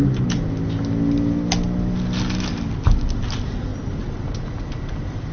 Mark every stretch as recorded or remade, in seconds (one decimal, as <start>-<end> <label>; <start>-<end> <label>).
0.0-5.3 recorded